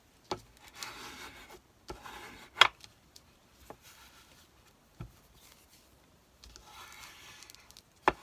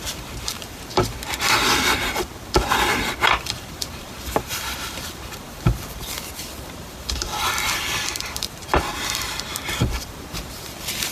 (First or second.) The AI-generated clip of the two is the second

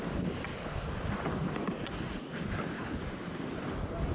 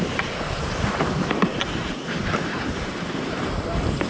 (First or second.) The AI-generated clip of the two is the second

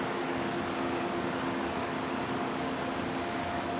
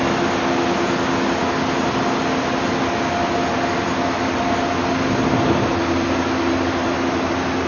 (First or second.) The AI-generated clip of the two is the first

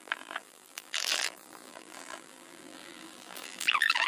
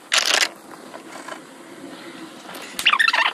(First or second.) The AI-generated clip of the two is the first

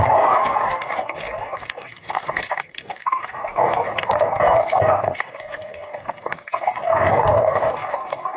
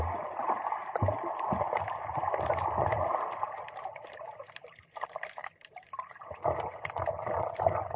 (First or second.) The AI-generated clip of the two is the first